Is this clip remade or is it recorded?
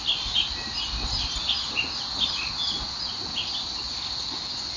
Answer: recorded